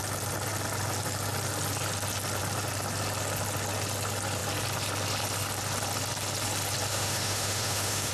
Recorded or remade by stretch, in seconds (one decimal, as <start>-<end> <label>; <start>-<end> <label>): 0.0-6.9 recorded; 6.9-8.1 remade